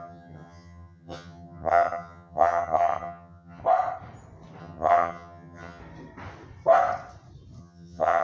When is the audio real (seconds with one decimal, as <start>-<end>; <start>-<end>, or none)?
3.6-4.6; 5.8-7.6